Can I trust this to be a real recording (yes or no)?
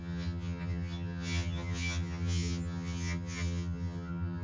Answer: no